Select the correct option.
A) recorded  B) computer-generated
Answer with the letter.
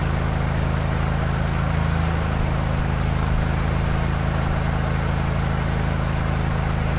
A